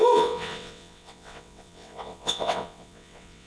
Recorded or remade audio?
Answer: remade